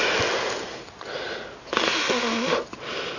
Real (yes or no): yes